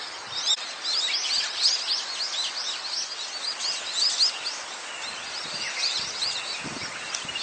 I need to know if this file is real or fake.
real